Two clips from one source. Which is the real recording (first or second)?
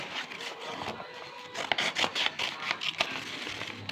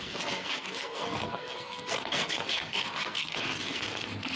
first